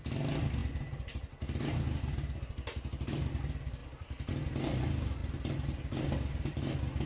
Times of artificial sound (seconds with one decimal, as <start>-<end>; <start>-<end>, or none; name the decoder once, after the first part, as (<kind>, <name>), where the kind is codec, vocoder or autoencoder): none

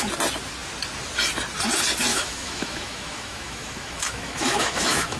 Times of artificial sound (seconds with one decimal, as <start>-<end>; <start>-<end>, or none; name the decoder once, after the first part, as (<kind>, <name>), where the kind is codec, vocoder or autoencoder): 2.1-5.2 (autoencoder, DAC-VAE)